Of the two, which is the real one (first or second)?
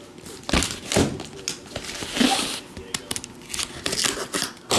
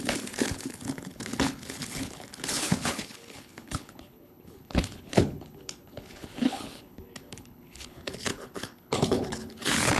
first